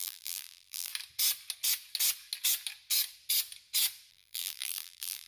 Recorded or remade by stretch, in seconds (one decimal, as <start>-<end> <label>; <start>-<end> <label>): 0.0-0.9 remade; 0.9-4.1 recorded; 4.1-5.3 remade